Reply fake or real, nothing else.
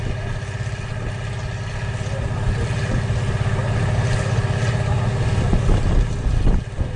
real